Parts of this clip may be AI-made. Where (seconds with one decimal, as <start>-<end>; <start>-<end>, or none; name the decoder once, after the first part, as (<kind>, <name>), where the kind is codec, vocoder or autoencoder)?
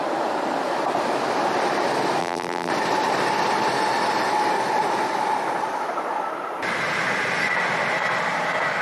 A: 2.2-2.7 (vocoder, BigVGAN v2)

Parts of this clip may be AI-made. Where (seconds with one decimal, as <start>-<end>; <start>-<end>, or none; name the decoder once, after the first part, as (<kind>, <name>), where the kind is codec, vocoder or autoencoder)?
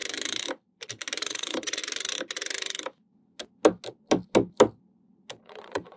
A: 1.2-1.8 (vocoder, Vocos); 5.4-6.0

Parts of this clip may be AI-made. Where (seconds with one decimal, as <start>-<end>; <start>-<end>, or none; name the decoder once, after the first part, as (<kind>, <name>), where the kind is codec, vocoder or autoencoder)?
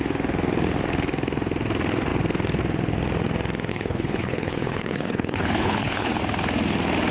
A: 3.7-6.2 (codec, HILCodec)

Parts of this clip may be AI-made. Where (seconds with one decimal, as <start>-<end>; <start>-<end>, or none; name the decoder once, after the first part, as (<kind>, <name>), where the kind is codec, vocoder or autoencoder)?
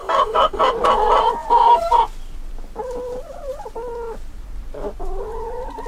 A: 0.0-0.6 (codec, DAC)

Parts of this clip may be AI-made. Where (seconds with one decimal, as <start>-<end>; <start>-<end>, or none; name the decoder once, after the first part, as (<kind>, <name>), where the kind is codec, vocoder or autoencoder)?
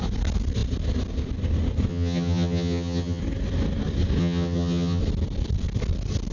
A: 1.9-3.2 (vocoder, HiFi-GAN); 4.2-5.0